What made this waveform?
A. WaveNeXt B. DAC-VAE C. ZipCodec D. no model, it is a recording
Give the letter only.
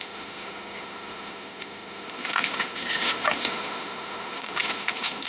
B